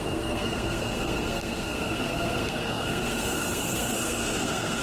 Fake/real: fake